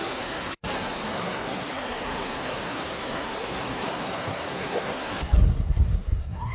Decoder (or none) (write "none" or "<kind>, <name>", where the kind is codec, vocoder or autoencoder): codec, SNAC